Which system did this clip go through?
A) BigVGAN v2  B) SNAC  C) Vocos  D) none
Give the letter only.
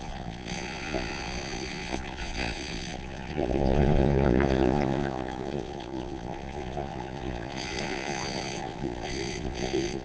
C